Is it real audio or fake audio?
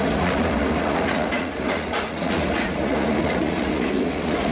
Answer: fake